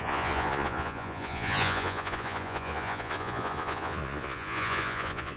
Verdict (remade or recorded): remade